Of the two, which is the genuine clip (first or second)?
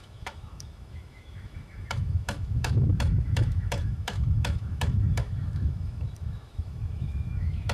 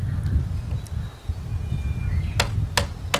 second